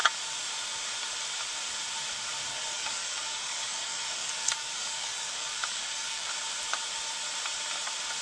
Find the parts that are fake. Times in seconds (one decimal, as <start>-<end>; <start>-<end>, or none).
2.5-6.3